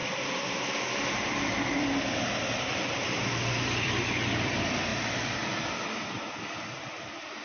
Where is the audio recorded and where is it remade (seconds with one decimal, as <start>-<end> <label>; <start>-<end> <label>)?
0.0-4.9 remade; 4.9-6.8 recorded; 6.8-7.4 remade